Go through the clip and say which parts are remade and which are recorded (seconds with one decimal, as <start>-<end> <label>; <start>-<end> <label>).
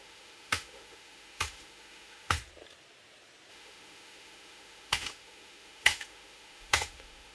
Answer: 0.0-2.4 remade; 2.4-3.5 recorded; 3.5-7.3 remade